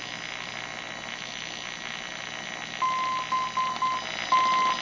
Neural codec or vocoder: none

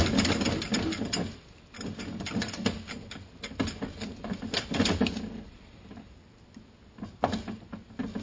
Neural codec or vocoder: none